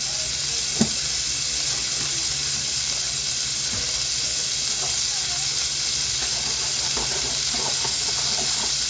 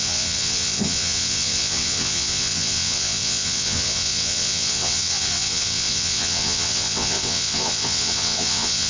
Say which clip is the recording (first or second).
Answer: first